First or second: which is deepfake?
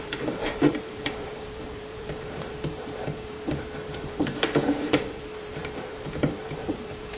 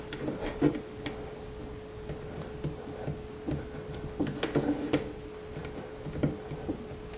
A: first